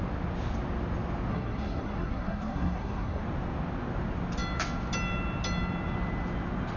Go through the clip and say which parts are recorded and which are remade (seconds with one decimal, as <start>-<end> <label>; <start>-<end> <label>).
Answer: 0.0-1.3 recorded; 1.3-3.2 remade; 3.2-6.8 recorded